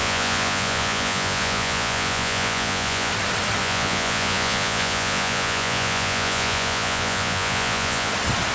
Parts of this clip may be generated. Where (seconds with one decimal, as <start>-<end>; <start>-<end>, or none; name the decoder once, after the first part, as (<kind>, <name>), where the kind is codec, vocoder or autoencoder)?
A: 0.0-3.1 (vocoder, Vocos); 3.6-8.1